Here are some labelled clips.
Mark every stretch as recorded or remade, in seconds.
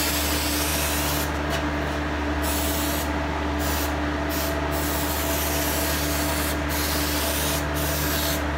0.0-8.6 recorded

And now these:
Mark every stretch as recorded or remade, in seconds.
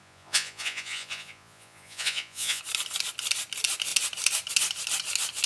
0.0-2.6 remade; 2.6-5.5 recorded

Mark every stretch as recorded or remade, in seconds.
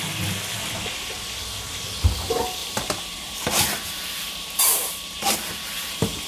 0.0-2.6 recorded; 2.6-6.3 remade